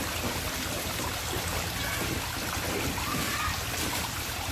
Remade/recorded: recorded